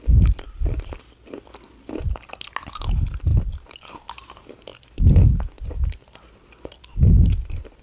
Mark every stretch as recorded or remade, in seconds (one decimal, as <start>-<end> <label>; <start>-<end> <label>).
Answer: 0.0-7.8 recorded